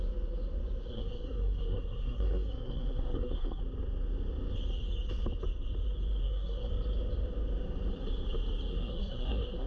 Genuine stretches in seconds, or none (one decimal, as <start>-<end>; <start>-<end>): 0.0-0.9; 3.6-6.2; 6.7-8.7